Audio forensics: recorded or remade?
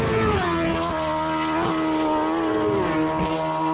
recorded